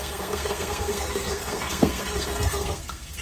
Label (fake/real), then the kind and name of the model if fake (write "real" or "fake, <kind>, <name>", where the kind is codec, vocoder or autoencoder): fake, codec, SNAC